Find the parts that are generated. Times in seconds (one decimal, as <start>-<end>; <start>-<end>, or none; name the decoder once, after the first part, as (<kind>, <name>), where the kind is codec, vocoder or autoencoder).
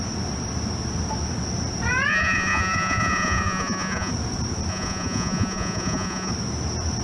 2.1-4.1 (vocoder, Vocos); 4.7-6.3